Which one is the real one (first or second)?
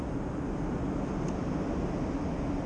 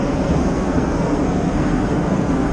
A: first